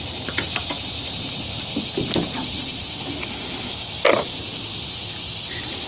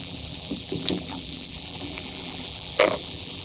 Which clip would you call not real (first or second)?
second